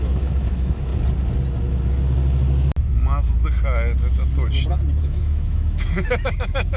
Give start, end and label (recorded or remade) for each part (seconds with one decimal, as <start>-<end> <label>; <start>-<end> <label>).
0.0-0.9 remade; 0.9-5.0 recorded; 5.0-6.8 remade

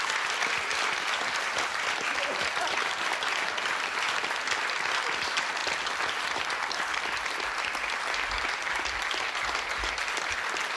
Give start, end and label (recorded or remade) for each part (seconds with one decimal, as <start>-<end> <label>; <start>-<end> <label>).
0.0-10.8 recorded

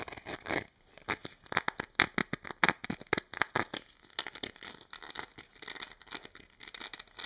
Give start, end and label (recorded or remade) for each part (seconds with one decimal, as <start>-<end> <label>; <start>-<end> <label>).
0.0-7.3 recorded

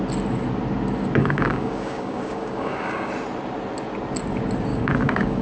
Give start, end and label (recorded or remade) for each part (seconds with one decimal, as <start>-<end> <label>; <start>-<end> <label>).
0.0-1.2 recorded; 1.2-3.1 remade; 3.1-4.7 recorded; 4.7-5.4 remade

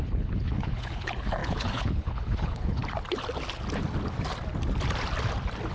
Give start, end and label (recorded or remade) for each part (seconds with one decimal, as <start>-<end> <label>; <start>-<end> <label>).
0.0-2.8 remade; 2.8-5.7 recorded